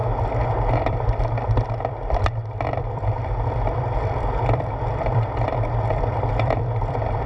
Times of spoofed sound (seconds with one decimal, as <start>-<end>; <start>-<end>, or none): 0.0-7.3